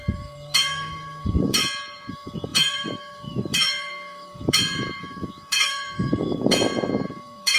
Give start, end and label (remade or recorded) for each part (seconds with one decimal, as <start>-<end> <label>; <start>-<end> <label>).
0.0-1.6 remade; 1.6-2.1 recorded; 2.1-7.6 remade